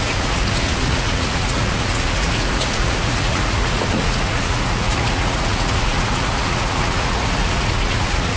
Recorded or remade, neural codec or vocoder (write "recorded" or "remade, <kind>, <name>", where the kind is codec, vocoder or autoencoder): remade, vocoder, Vocos